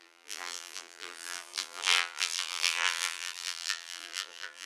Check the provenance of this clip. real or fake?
fake